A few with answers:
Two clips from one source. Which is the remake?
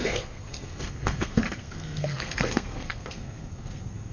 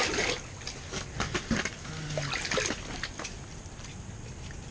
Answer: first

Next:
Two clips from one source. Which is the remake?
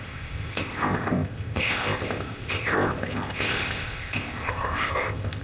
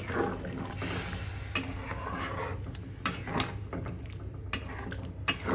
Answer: first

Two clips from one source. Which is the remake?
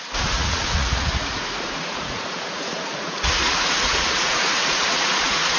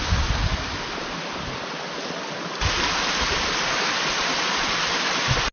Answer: first